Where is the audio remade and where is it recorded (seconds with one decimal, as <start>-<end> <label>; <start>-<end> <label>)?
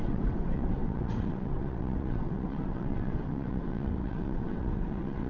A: 0.0-5.3 remade